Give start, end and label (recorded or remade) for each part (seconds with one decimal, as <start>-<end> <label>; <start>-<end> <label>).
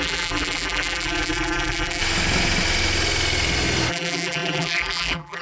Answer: 0.0-2.0 remade; 2.0-3.9 recorded; 3.9-5.4 remade